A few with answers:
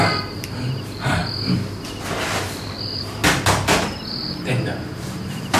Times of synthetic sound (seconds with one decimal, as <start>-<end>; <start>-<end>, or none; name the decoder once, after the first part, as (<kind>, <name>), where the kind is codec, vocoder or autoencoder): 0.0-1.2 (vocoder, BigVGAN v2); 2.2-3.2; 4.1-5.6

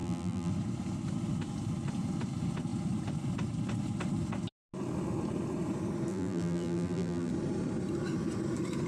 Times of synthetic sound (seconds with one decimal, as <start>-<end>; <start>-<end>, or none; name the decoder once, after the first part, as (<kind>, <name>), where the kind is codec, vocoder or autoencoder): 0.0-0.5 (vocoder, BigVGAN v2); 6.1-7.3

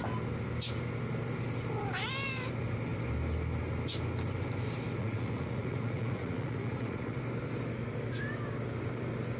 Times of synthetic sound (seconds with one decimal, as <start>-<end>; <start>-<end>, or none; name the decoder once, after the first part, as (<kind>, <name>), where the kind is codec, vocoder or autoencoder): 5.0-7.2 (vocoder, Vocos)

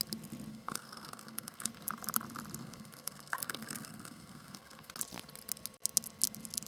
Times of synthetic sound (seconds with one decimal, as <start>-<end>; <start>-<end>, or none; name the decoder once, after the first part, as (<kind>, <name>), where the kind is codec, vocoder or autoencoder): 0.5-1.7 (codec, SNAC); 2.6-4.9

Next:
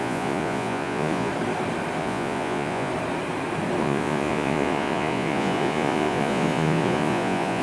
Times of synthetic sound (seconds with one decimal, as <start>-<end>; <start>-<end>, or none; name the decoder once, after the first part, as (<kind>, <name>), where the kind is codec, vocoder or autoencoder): 0.0-1.3 (vocoder, Vocos); 2.0-2.9; 3.8-7.6

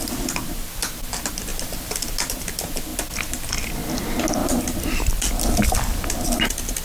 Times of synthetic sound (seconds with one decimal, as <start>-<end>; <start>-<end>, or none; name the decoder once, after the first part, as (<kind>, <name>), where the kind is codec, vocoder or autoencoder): 4.4-5.3 (vocoder, BigVGAN v2)